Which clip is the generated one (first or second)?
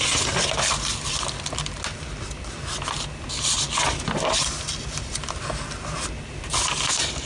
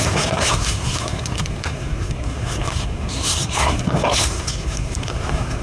second